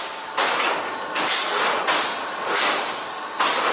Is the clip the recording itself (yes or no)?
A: yes